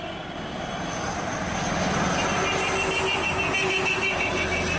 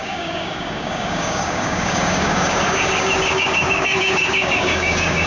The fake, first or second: second